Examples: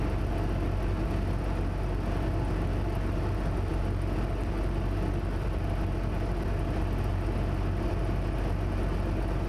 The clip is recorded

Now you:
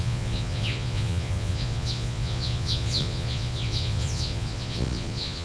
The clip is remade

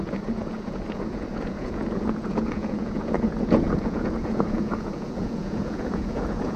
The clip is remade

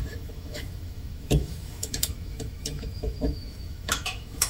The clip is remade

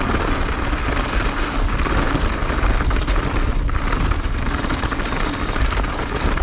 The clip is recorded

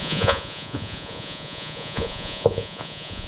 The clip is remade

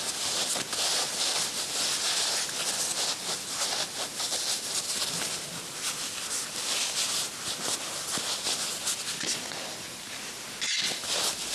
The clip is recorded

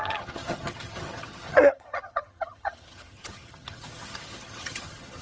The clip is remade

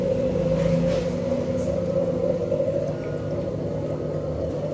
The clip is recorded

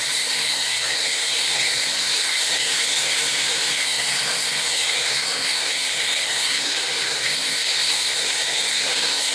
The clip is remade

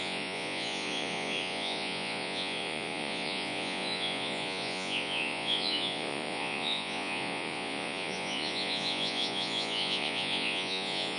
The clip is remade